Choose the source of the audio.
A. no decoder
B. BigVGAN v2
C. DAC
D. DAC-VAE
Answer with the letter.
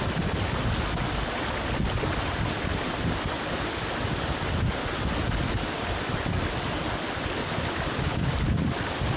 A